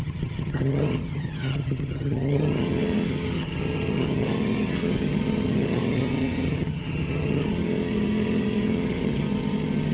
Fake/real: fake